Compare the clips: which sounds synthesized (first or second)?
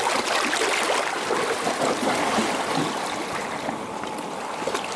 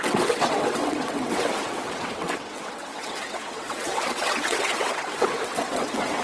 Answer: second